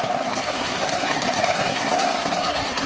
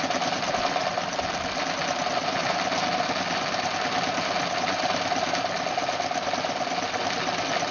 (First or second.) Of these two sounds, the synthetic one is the first